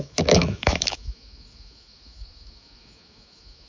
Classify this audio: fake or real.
fake